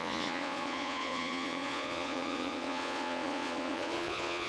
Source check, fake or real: fake